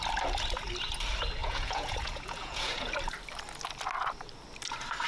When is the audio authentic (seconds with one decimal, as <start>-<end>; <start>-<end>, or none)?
0.0-1.4; 2.9-5.1